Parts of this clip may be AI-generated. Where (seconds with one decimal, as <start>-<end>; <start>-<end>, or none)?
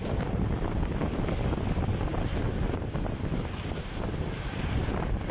none